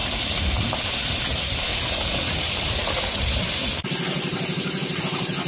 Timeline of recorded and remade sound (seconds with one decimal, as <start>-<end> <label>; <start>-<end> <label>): 0.0-1.2 remade; 1.2-1.7 recorded; 1.7-5.0 remade; 5.0-5.5 recorded